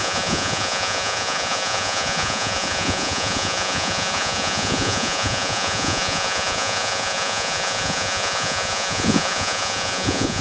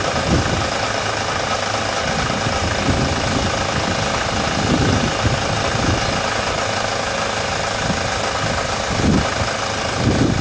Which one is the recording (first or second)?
second